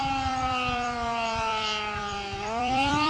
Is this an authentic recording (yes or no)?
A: no